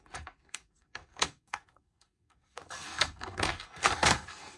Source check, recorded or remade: remade